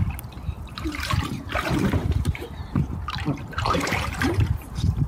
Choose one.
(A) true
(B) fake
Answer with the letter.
B